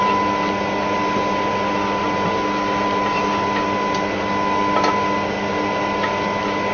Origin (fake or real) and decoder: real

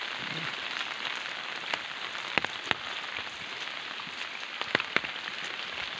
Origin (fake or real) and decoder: real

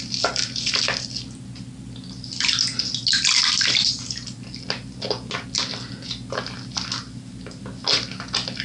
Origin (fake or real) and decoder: real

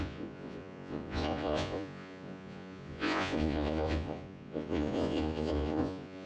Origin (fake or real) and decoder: fake, vocoder, Vocos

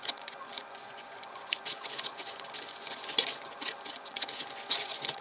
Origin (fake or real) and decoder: fake, vocoder, Vocos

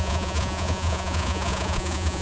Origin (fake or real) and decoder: fake, vocoder, Vocos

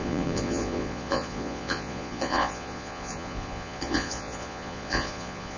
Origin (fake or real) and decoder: fake, vocoder, Vocos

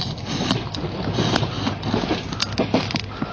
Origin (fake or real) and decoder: real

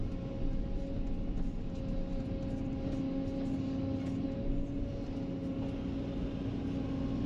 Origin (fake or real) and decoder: real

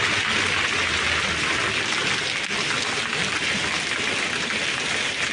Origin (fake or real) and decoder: real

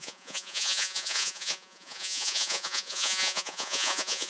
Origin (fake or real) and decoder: fake, vocoder, Vocos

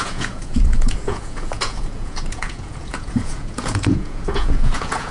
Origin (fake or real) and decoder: fake, vocoder, Vocos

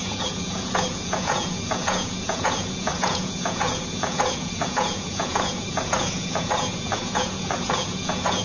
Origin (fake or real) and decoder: fake, vocoder, Vocos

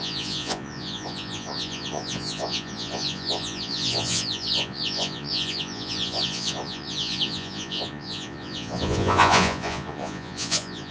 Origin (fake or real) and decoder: fake, vocoder, Vocos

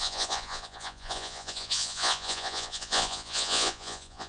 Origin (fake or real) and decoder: fake, vocoder, Vocos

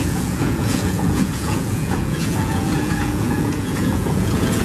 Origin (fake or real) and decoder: fake, vocoder, Vocos